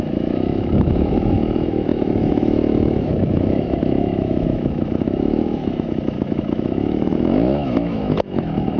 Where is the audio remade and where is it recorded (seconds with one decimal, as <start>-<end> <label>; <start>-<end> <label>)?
0.0-8.8 remade